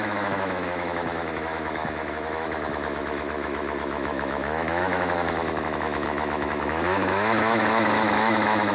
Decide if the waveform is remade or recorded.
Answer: remade